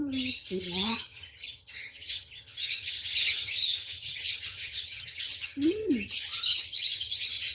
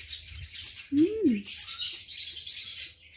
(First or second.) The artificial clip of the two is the first